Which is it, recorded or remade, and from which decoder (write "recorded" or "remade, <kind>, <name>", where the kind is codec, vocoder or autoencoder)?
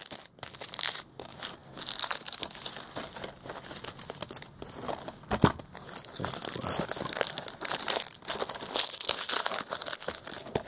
recorded